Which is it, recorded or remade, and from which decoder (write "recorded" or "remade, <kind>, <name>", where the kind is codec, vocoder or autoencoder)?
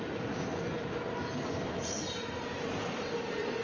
recorded